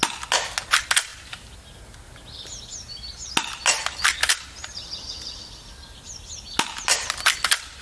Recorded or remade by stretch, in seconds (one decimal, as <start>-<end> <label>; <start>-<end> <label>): 0.0-7.8 recorded